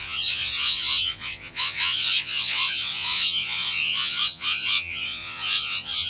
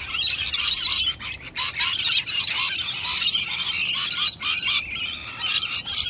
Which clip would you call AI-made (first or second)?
first